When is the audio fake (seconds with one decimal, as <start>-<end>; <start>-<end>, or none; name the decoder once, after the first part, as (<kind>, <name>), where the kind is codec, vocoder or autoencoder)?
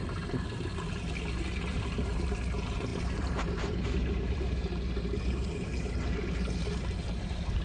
0.0-0.7 (vocoder, BigVGAN v2); 1.7-7.6